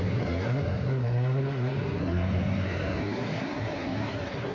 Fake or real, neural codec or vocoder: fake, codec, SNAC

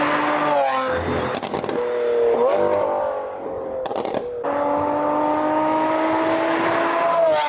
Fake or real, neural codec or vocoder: real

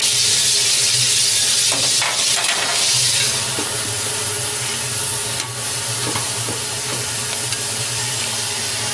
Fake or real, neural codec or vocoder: real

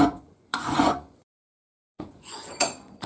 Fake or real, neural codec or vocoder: fake, vocoder, Vocos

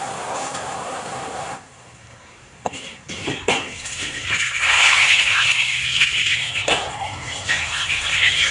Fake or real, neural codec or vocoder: fake, codec, SNAC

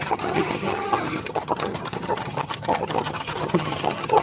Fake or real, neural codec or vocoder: fake, vocoder, HiFi-GAN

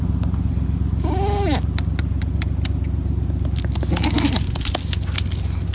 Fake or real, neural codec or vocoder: real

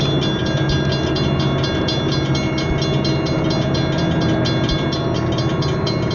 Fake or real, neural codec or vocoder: real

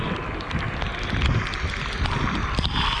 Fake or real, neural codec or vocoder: real